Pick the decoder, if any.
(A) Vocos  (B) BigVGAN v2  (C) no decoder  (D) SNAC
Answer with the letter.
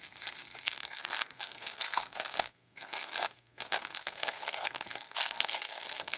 D